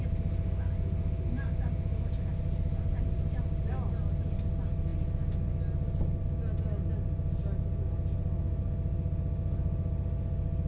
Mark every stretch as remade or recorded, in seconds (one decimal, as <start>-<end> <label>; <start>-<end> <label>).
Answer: 0.0-10.7 recorded